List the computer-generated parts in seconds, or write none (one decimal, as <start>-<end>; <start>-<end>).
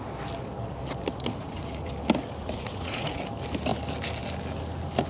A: 1.4-1.9; 2.4-3.2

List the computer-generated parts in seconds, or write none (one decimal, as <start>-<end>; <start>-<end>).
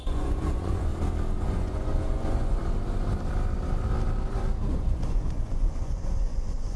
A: 0.0-0.9; 1.4-2.6; 4.7-6.8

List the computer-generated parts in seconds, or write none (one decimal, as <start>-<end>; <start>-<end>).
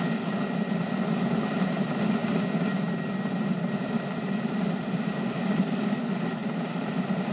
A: none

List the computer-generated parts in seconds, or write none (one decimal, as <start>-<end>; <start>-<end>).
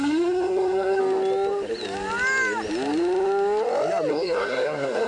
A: 0.0-1.0; 4.1-5.1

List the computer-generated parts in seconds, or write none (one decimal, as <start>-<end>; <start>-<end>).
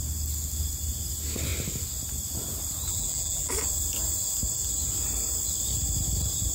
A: 2.9-3.5